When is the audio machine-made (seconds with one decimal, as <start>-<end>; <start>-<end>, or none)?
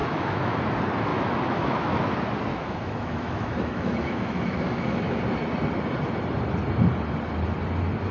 0.0-0.6; 1.1-2.0; 2.5-5.2